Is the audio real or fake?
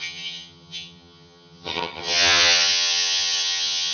fake